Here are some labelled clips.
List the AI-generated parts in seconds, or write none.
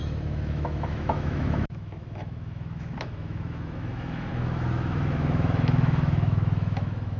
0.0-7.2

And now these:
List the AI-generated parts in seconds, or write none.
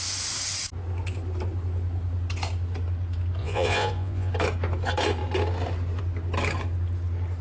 3.4-4.3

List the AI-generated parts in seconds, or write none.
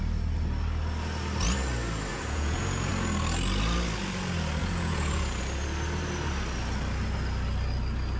2.1-2.9; 4.6-5.4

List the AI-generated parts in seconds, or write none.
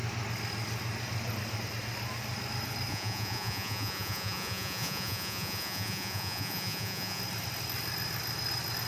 2.9-7.2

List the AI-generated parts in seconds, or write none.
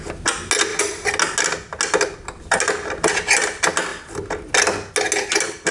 none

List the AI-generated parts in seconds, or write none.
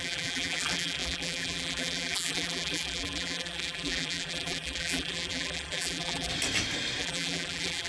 0.0-6.3; 7.0-7.9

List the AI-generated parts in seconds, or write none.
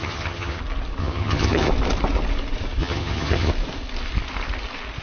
0.0-0.6; 1.0-1.7; 2.8-3.5